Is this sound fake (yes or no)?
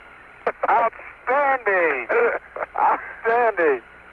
no